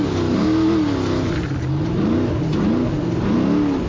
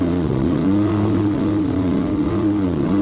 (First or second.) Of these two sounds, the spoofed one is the second